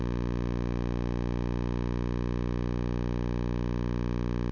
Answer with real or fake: real